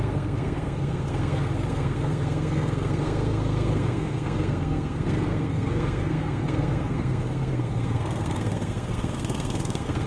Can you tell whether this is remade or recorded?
remade